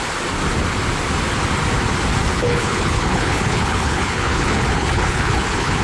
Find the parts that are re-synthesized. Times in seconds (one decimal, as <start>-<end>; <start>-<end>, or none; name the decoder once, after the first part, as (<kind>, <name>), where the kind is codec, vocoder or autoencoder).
2.3-5.8 (codec, HILCodec)

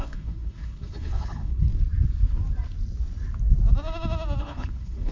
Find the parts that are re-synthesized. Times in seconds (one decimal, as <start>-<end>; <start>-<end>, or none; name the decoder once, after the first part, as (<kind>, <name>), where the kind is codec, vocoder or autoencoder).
0.0-1.7 (codec, HILCodec); 4.4-5.1

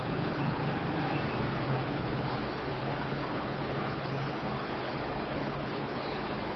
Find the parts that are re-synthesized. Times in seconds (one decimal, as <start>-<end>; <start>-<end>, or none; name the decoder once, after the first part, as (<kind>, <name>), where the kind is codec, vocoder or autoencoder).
0.0-0.6 (codec, HILCodec); 1.5-6.6

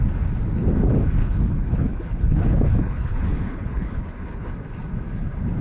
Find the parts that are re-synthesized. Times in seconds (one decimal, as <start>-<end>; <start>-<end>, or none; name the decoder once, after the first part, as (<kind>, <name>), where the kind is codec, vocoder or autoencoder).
1.2-4.5 (codec, HILCodec)

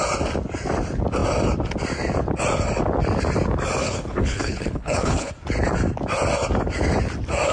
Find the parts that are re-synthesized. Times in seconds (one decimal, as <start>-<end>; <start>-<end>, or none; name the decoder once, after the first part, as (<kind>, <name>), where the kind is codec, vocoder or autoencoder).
3.8-5.3 (codec, HILCodec)

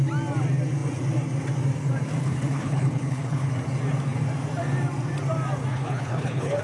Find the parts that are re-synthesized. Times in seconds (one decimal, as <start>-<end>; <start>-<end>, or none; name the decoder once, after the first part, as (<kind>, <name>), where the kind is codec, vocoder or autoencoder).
2.2-3.5 (codec, HILCodec); 5.7-6.6

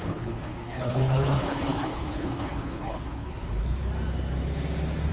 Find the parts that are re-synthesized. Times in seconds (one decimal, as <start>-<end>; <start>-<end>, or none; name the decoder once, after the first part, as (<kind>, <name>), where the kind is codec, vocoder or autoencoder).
0.0-3.9 (codec, HILCodec)

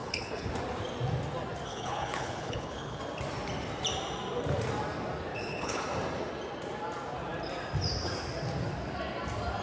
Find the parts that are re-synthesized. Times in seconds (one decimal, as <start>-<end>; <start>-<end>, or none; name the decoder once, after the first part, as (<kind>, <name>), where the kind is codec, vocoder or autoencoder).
0.0-0.5 (codec, HILCodec); 1.7-3.0; 5.3-5.8